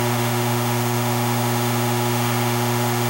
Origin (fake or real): fake